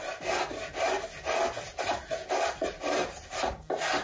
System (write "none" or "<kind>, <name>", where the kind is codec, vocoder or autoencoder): none